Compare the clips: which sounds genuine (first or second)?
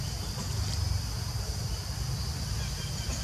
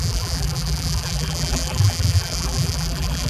first